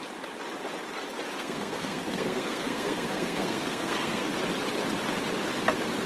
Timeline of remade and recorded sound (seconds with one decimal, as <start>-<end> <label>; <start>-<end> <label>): 0.0-1.4 recorded; 1.4-4.3 remade; 4.3-6.1 recorded